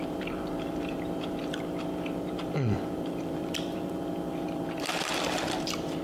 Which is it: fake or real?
fake